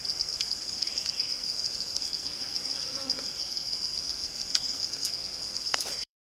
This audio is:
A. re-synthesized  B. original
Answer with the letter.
A